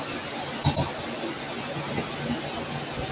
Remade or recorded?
recorded